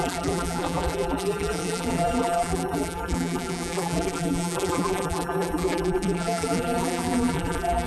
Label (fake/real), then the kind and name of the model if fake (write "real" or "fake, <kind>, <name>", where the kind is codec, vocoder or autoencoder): fake, vocoder, BigVGAN v2